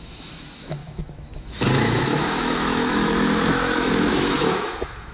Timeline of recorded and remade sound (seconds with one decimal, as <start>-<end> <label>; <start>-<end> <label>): 0.0-5.1 remade